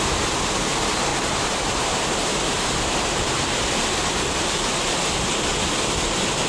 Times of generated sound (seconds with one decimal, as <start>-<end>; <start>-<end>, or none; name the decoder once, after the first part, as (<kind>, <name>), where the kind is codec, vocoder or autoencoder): 1.1-5.0 (vocoder, BigVGAN v2)